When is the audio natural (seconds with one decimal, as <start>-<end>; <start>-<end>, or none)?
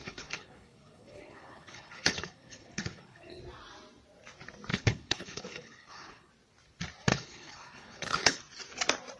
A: 3.4-4.7; 6.3-7.1; 8.4-9.2